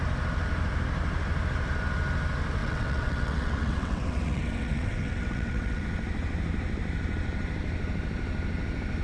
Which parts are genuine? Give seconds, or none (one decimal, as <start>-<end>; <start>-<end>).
0.0-2.6; 5.8-9.0